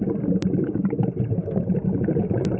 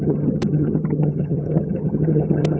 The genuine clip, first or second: first